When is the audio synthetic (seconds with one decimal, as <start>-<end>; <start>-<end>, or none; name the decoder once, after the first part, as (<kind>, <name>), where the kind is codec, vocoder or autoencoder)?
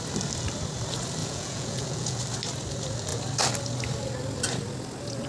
1.2-2.2 (vocoder, Vocos)